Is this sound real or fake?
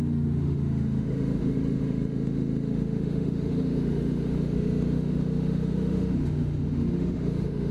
fake